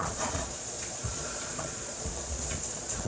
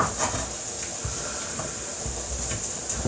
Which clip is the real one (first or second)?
second